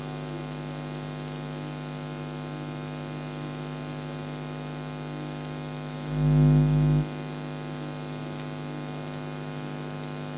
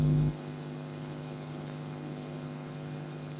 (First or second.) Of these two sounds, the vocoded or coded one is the second